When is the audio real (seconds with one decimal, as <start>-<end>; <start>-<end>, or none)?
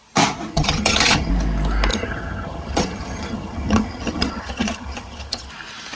0.0-0.5; 1.3-1.9; 5.5-6.0